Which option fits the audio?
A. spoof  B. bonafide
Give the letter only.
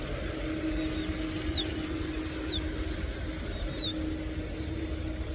B